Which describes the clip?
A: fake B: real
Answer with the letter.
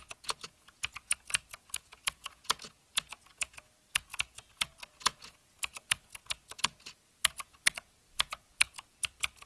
A